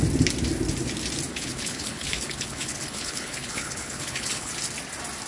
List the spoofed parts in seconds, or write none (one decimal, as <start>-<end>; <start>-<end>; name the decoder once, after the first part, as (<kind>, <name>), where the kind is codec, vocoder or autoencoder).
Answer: 1.3-4.5 (codec, HILCodec)